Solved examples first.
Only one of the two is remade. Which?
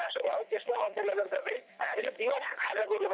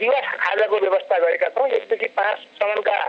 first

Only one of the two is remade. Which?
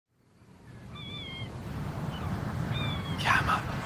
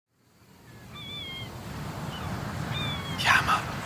first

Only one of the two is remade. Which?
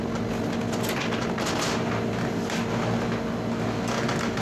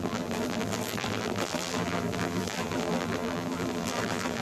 second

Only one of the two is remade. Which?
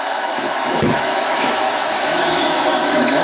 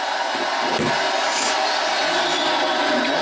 first